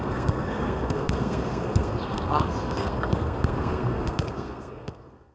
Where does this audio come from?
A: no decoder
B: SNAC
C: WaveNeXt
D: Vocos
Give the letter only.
B